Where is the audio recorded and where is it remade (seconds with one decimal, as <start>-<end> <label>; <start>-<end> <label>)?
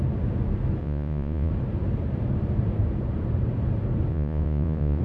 0.0-0.8 recorded; 0.8-1.5 remade; 1.5-4.1 recorded; 4.1-5.0 remade